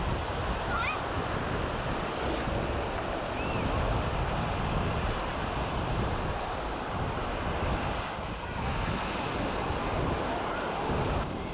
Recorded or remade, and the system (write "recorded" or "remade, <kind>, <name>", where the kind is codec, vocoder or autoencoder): recorded